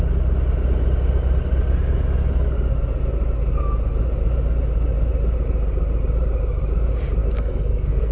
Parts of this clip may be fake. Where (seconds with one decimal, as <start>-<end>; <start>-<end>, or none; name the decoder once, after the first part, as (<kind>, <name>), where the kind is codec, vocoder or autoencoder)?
7.2-8.1 (codec, SNAC)